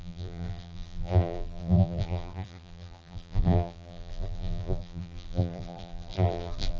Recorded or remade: remade